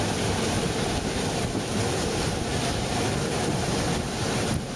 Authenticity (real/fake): real